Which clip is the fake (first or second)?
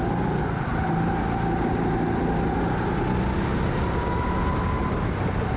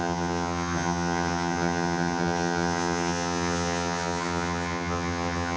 second